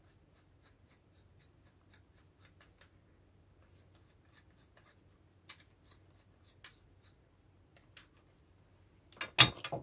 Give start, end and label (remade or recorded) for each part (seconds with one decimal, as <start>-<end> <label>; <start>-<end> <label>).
0.0-9.8 recorded